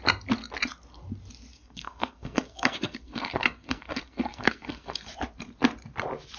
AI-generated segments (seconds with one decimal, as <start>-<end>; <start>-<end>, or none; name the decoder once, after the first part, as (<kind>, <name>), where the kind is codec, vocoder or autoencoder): 1.5-5.1 (codec, SNAC)